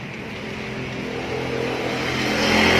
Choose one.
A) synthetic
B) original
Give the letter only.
B